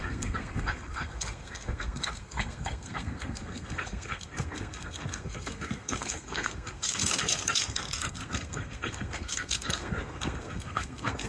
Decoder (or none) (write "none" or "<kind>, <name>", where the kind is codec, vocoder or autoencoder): codec, SNAC